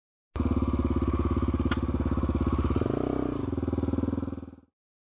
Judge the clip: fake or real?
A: real